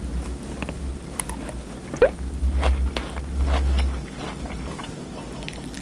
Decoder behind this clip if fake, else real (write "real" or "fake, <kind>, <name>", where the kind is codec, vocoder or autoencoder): real